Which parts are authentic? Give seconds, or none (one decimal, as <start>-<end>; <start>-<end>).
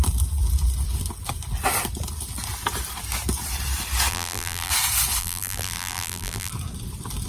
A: 0.0-4.1; 4.7-5.2; 6.5-7.3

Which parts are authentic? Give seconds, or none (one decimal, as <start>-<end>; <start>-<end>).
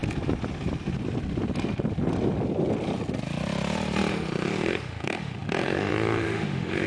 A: 0.0-4.1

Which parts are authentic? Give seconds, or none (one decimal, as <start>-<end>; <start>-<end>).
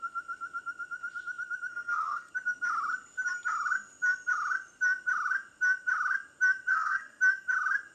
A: 0.0-1.7; 2.3-6.7; 7.2-7.9